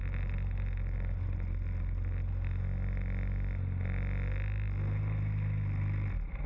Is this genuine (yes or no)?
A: yes